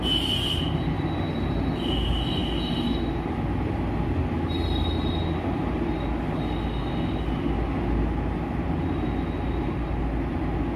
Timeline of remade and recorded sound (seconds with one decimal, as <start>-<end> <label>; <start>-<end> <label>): 0.0-10.8 recorded